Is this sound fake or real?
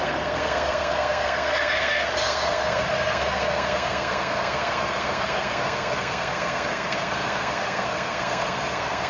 fake